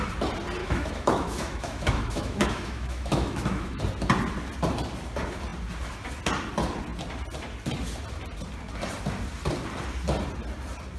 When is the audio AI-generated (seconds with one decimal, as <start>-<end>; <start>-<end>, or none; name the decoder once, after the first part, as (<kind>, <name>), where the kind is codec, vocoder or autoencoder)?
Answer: 0.6-3.8 (autoencoder, DAC-VAE)